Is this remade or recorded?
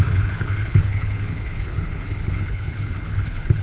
remade